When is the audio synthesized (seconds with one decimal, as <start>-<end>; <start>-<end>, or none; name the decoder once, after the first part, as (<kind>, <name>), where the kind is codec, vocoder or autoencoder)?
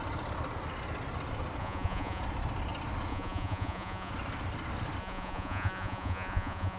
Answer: 1.6-2.2 (vocoder, Vocos); 3.1-4.1; 5.0-6.8